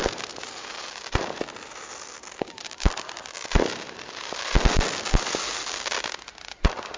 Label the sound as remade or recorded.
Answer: recorded